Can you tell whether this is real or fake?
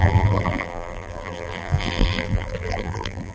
fake